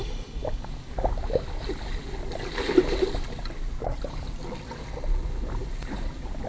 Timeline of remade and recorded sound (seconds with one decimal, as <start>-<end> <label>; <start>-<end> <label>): 0.0-6.5 recorded